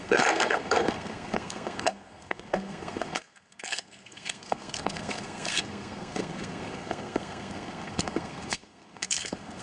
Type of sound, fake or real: fake